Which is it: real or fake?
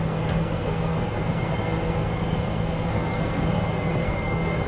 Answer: fake